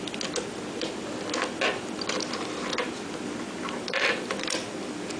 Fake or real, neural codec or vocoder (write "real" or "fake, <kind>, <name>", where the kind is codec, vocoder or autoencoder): fake, vocoder, BigVGAN v2